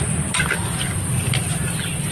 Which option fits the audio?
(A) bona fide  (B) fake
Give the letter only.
A